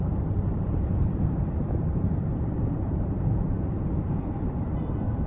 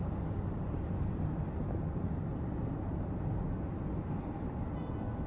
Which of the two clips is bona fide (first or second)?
second